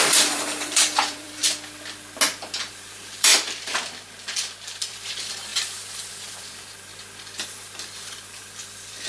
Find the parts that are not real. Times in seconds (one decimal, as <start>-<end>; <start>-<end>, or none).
0.0-1.4; 2.7-3.3; 4.9-6.9; 7.5-9.1